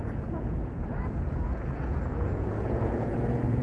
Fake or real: fake